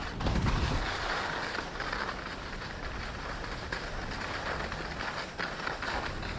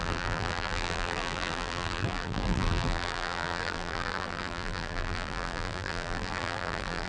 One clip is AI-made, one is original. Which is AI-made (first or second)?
second